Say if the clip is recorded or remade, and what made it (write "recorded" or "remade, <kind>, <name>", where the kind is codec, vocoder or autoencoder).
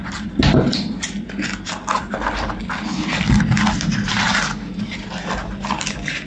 recorded